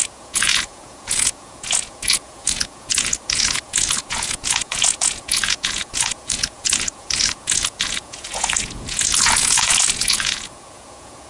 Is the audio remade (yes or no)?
yes